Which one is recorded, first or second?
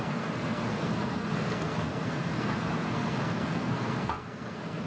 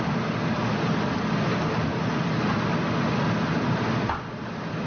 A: second